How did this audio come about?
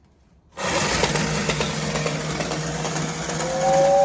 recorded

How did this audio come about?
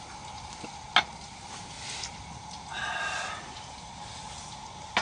recorded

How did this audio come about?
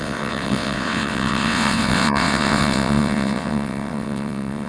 remade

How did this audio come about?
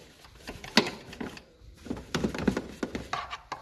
recorded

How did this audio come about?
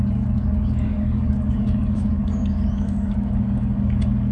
remade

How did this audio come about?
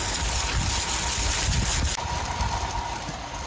recorded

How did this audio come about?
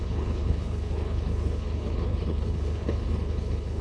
remade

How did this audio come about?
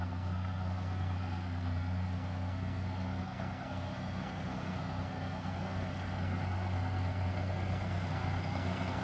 remade